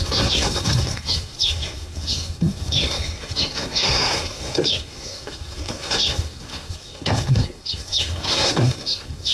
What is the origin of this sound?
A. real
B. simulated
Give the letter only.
B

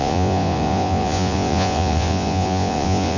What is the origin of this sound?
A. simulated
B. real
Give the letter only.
A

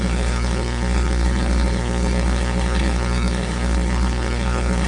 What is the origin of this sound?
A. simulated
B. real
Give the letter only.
A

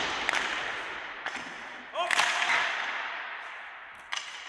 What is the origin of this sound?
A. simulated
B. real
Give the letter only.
B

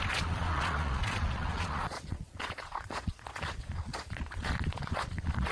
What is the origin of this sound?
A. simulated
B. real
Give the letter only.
A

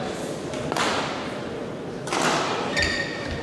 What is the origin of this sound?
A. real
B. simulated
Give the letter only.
A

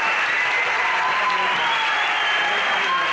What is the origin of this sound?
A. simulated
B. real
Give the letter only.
B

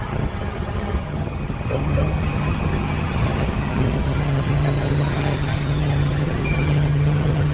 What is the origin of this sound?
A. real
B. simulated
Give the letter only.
B